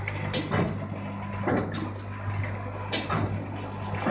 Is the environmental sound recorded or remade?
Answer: recorded